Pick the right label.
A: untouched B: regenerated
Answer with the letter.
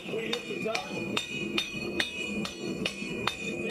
B